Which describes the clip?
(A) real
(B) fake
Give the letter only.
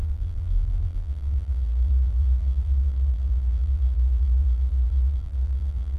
B